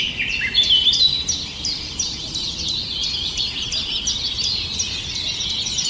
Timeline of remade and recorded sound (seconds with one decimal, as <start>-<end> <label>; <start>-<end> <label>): 0.0-5.9 recorded